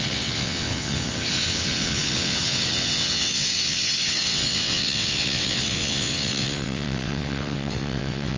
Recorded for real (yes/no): no